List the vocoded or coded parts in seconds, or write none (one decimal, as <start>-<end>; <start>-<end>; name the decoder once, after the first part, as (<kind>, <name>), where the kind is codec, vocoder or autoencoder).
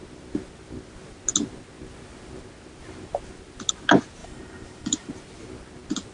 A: 4.2-5.1 (vocoder, BigVGAN v2)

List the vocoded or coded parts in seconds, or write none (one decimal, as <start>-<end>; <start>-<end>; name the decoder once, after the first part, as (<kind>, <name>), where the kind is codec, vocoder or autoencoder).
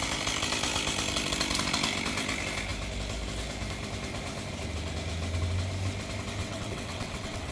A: 6.4-7.5 (vocoder, WaveNeXt)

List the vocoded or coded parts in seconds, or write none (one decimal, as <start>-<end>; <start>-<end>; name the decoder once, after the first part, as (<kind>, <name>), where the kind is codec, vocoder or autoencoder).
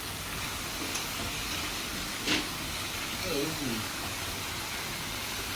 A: 1.0-4.4 (codec, DAC)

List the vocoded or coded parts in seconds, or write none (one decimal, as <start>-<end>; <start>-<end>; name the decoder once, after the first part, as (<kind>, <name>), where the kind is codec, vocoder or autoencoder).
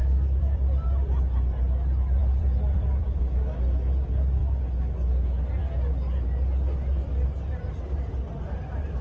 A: 0.0-1.2 (vocoder, BigVGAN v2); 2.2-3.2; 7.5-9.0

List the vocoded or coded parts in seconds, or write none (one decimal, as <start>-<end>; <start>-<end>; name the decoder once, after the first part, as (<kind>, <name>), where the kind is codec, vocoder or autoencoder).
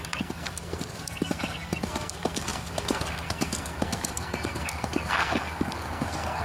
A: 0.0-6.4 (codec, SNAC)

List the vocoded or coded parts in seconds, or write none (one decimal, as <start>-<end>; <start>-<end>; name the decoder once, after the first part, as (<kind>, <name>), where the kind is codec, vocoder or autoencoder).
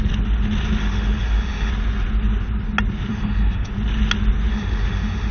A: 0.8-1.7 (autoencoder, DAC-VAE); 3.1-3.7; 4.5-5.3